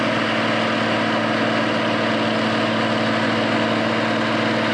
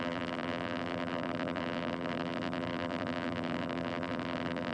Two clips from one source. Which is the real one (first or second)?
first